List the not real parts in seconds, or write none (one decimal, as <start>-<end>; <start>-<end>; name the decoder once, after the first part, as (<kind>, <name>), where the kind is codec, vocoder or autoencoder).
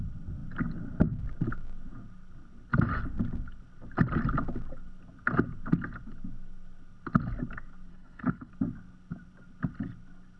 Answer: 7.9-8.5 (codec, HILCodec)